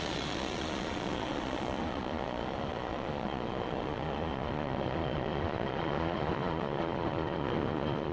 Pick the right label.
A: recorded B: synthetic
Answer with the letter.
B